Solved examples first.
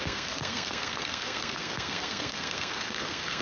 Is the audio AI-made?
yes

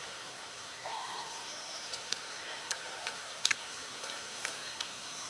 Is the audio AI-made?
yes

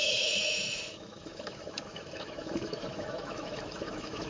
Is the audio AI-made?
yes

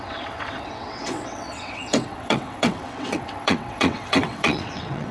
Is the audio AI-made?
yes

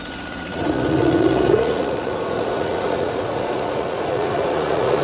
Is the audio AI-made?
yes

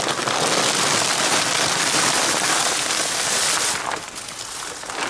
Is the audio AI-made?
no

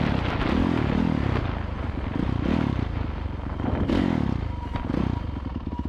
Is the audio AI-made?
no